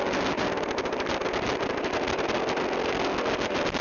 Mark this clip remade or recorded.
recorded